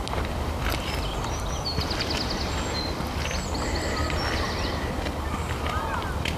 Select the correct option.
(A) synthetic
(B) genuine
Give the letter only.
B